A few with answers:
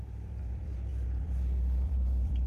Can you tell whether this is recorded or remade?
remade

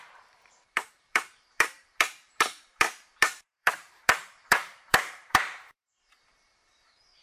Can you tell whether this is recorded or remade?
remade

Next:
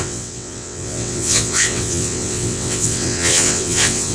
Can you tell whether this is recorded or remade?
remade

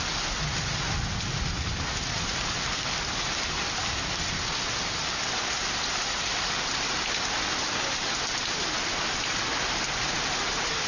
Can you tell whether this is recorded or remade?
recorded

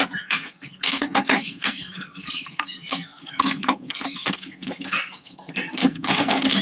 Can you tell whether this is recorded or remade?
remade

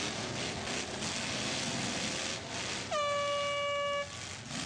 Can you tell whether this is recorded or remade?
recorded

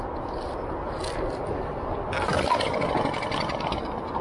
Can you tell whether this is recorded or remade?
recorded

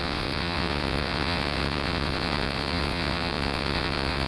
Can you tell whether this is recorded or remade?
remade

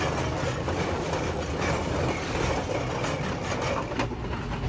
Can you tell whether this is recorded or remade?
recorded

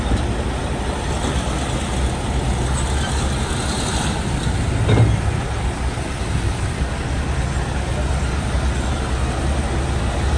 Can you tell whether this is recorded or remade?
recorded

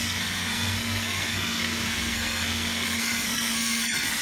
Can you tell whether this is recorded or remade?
remade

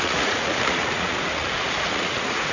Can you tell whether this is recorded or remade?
remade